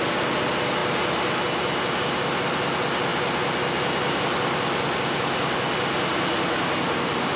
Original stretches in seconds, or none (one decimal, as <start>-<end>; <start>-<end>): 0.0-7.4